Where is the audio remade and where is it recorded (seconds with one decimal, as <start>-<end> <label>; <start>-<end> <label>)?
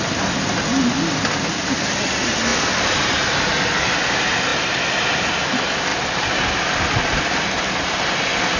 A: 0.0-8.6 recorded